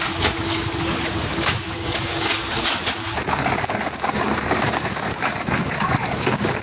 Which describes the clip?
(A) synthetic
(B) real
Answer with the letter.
A